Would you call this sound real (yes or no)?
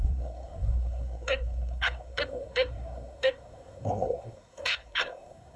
no